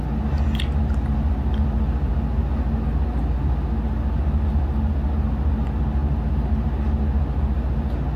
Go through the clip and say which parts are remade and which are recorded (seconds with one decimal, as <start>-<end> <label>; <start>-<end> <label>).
0.0-8.2 recorded